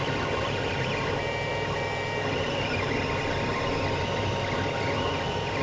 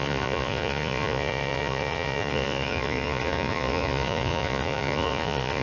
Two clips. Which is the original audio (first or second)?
first